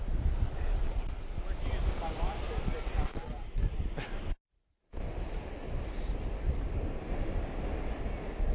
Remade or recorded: recorded